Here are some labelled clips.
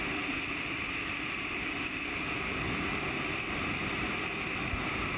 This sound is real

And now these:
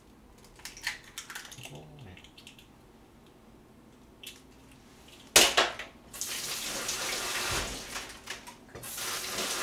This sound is real